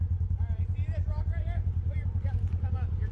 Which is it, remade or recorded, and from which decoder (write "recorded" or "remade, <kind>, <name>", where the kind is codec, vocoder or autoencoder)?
recorded